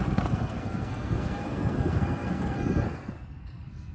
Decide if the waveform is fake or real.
fake